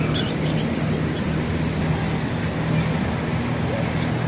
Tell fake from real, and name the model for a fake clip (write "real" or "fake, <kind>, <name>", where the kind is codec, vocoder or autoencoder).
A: fake, vocoder, BigVGAN v2